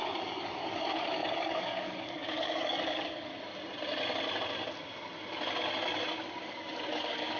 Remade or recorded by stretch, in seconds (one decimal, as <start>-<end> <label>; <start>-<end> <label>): 0.0-3.3 remade; 3.3-6.4 recorded; 6.4-7.4 remade